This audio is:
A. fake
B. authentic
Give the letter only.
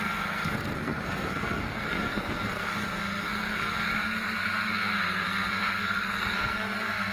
A